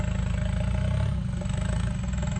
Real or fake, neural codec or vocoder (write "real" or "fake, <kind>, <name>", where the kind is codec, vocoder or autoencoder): real